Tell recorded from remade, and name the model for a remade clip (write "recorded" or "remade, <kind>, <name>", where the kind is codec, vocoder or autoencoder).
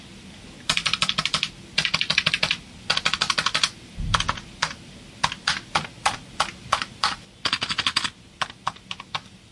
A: recorded